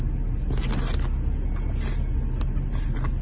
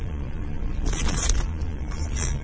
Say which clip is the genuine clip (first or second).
first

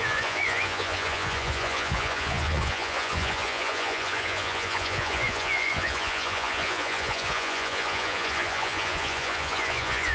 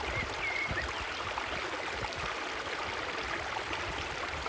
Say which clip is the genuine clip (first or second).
second